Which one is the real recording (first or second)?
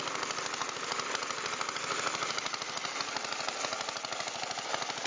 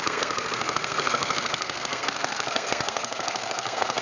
first